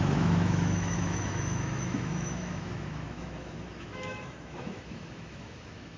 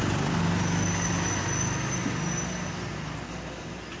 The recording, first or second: second